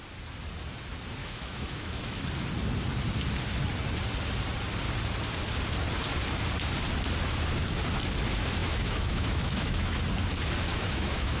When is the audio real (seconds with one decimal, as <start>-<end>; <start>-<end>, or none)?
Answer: 0.0-1.2; 2.2-8.6; 10.0-10.7